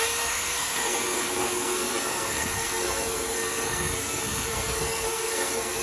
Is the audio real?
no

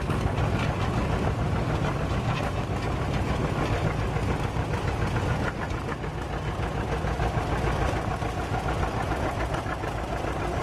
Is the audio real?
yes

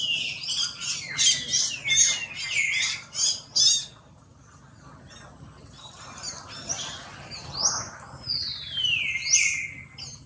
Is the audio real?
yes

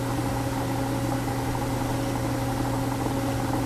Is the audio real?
yes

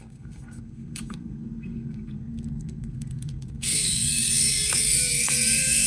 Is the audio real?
no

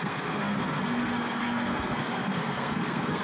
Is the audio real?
no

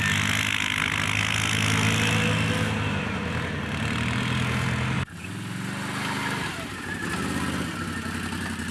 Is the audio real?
yes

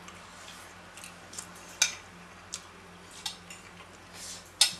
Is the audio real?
yes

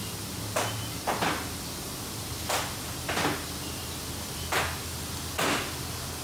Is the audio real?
yes